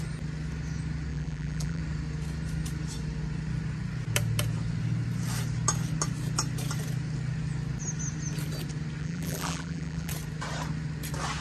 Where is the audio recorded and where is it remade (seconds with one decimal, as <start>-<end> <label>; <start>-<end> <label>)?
0.0-1.1 recorded; 1.1-1.8 remade; 1.8-9.0 recorded; 9.0-10.1 remade; 10.1-11.4 recorded